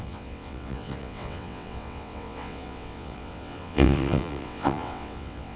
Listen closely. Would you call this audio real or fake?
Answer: fake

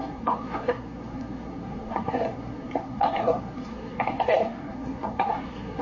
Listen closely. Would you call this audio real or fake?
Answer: fake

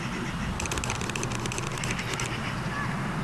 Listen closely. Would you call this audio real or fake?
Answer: real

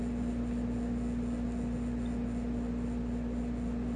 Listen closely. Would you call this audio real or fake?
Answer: real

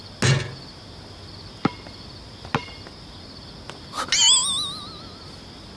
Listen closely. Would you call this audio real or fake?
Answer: real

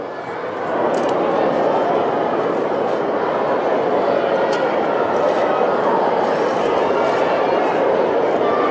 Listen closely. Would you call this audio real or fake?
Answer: real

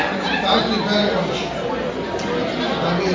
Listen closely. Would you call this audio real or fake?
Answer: real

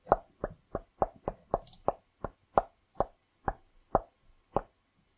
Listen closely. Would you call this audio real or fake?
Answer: real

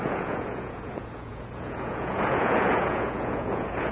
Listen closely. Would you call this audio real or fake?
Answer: fake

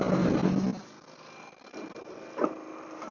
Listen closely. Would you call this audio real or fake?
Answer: real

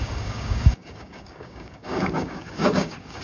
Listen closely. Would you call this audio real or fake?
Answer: fake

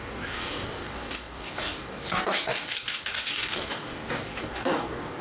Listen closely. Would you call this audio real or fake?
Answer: fake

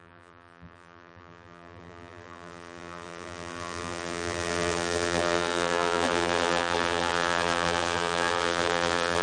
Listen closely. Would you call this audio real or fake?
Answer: fake